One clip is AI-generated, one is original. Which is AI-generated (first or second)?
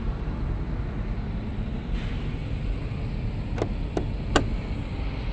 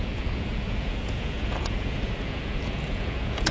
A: second